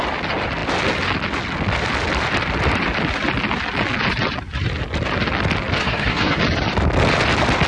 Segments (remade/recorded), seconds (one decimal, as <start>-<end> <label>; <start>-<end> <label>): 0.0-5.8 recorded; 5.8-6.4 remade; 6.4-7.7 recorded